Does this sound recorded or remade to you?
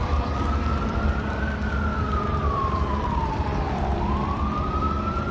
remade